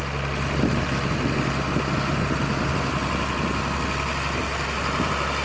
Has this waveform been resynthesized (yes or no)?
no